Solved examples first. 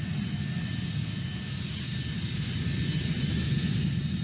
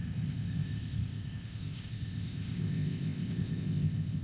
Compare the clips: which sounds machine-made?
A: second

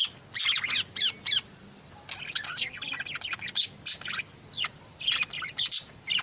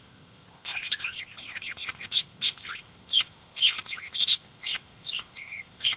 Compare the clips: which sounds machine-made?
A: second